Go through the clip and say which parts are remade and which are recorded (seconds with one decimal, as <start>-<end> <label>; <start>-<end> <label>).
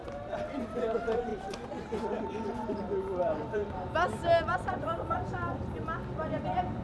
0.0-1.3 remade; 1.3-3.2 recorded; 3.2-3.6 remade; 3.6-6.8 recorded